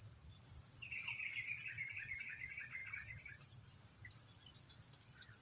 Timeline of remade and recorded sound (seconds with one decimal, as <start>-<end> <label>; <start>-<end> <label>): 0.0-5.4 recorded